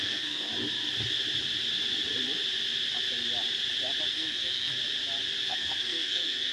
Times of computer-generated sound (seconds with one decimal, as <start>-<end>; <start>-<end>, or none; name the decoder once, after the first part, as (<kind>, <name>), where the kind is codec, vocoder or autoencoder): 0.0-0.5 (codec, SNAC); 4.1-4.7; 5.4-6.5